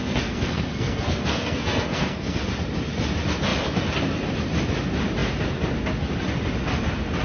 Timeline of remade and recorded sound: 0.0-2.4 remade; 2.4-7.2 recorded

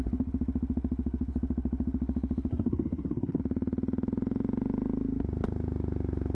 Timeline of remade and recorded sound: 0.0-2.5 recorded; 2.5-3.4 remade; 3.4-6.3 recorded

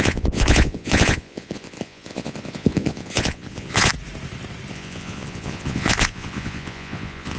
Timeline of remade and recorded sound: 0.0-3.9 remade; 3.9-4.7 recorded; 4.7-7.4 remade